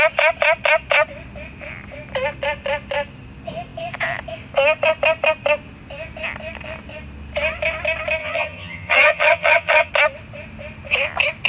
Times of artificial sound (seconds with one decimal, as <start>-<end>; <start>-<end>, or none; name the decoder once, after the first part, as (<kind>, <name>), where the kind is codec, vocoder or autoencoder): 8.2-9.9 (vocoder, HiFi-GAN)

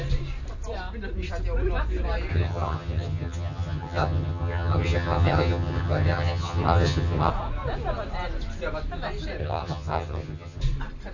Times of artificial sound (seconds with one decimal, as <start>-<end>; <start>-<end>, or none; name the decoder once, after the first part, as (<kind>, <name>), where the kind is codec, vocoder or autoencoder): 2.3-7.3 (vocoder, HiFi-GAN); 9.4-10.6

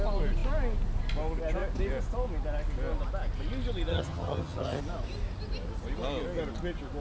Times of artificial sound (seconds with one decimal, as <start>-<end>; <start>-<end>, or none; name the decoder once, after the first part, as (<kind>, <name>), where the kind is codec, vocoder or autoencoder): 3.9-4.8 (vocoder, HiFi-GAN)

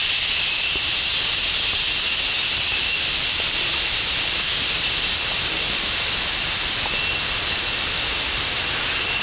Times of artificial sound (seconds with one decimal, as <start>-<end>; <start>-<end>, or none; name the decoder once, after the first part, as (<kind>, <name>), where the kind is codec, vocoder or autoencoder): none